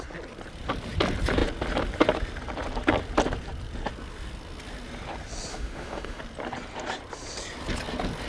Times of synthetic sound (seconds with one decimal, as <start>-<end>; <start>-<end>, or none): 5.5-6.2